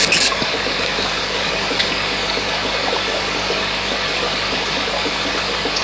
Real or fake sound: fake